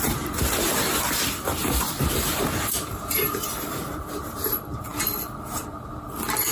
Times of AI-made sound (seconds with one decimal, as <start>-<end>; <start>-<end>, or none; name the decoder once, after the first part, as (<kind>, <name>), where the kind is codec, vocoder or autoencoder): 1.6-3.9 (vocoder, BigVGAN v2)